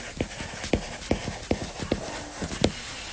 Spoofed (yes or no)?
no